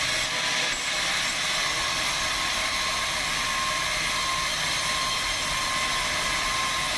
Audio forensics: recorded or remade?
recorded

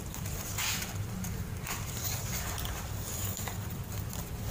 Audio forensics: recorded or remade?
remade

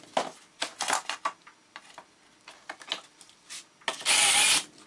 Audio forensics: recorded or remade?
recorded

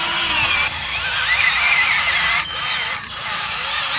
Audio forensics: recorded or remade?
remade